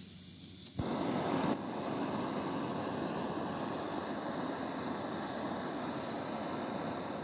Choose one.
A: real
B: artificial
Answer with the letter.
A